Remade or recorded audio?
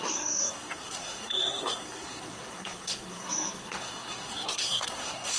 remade